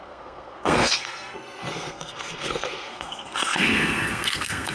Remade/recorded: remade